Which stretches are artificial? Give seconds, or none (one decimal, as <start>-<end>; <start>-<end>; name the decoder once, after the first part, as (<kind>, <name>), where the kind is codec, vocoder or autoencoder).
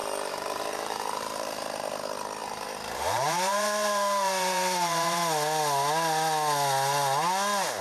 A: 0.0-1.9 (vocoder, BigVGAN v2); 2.4-5.2